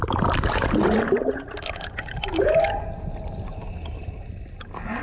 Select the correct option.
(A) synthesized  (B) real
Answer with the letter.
B